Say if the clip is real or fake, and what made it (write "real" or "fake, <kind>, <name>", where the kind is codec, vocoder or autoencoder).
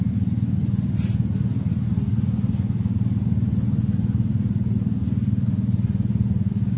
real